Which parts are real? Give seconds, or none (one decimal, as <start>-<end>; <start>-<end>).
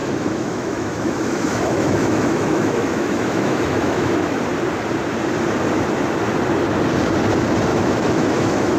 4.4-7.7